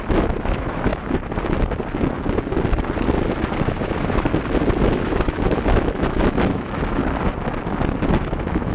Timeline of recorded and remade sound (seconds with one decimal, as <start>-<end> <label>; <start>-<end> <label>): 0.0-0.9 remade; 0.9-3.6 recorded; 3.6-4.3 remade; 4.3-4.9 recorded; 4.9-7.0 remade; 7.0-8.1 recorded; 8.1-8.7 remade